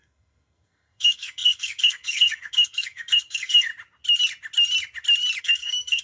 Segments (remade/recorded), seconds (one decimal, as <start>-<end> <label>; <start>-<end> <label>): 0.0-3.7 remade; 3.7-5.4 recorded; 5.4-6.0 remade